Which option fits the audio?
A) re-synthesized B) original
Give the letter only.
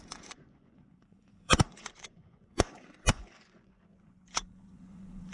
A